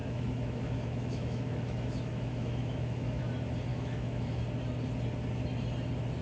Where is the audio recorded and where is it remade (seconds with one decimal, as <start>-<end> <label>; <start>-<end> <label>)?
0.0-3.2 remade; 3.2-3.7 recorded; 3.7-4.4 remade; 4.4-6.2 recorded